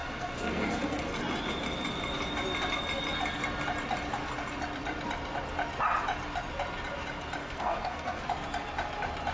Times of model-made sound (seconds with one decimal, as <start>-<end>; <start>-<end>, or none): 0.0-1.0; 7.4-8.2